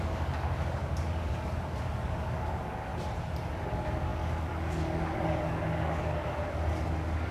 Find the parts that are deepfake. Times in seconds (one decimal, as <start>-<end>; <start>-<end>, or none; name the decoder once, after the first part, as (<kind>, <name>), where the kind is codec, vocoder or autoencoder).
0.0-2.9 (codec, DAC); 3.6-7.3